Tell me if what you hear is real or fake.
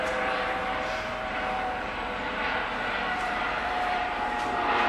fake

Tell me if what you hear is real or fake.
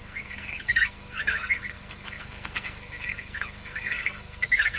fake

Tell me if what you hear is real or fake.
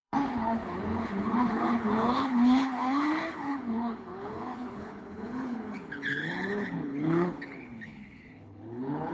fake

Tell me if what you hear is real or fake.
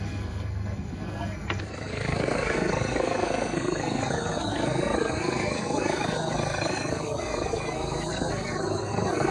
fake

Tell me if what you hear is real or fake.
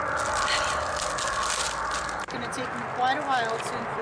real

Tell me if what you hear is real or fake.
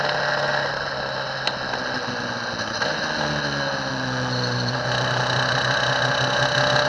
real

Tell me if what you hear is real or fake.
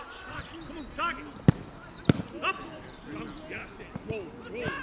real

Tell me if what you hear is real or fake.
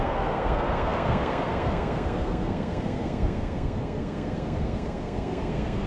fake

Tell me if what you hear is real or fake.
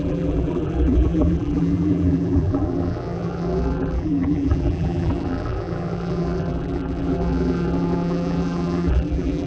fake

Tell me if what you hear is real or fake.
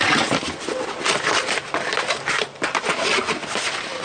real